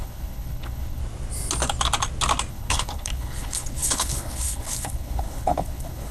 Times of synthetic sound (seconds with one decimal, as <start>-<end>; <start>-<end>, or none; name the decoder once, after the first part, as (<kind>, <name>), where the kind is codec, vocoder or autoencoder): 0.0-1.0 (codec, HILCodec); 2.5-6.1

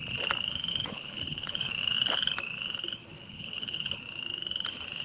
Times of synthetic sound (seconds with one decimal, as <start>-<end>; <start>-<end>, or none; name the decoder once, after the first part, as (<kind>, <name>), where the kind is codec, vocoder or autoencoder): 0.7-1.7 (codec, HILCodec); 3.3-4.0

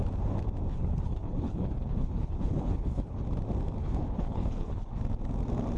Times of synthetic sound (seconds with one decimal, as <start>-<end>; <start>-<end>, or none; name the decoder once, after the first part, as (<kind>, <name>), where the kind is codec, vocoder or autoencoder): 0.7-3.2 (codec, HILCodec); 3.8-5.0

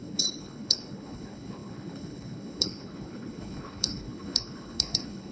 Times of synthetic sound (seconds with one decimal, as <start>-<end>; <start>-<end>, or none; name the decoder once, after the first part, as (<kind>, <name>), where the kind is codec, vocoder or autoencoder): 0.0-5.3 (codec, HILCodec)